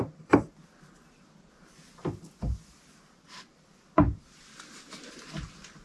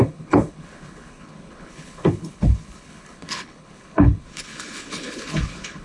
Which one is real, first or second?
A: first